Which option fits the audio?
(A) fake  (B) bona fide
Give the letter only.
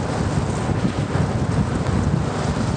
B